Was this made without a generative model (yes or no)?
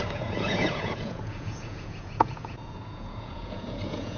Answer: no